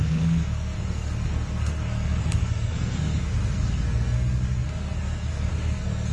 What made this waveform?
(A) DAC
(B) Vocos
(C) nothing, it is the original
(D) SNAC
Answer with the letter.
D